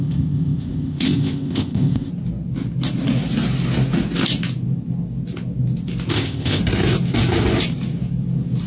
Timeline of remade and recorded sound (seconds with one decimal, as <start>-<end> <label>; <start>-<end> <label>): 0.0-2.1 remade; 2.1-6.1 recorded; 6.1-6.6 remade; 6.6-8.7 recorded